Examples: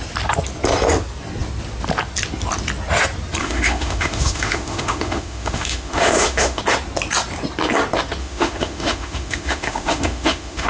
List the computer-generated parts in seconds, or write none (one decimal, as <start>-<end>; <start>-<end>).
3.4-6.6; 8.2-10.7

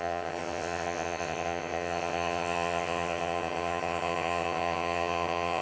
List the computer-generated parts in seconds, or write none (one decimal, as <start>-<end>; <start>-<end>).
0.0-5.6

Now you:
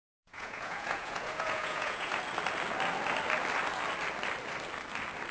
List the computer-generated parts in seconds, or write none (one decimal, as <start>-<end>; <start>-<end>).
0.0-2.1

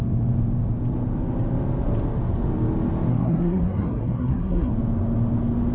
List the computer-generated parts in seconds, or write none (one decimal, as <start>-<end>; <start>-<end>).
3.1-4.7

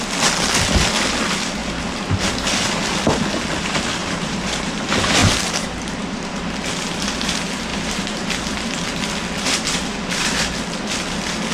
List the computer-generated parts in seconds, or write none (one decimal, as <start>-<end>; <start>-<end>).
4.0-4.8; 5.2-6.3; 7.7-8.3

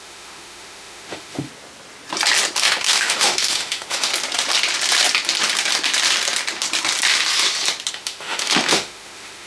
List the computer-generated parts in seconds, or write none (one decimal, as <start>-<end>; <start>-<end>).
0.0-1.5; 2.6-4.1; 7.9-9.5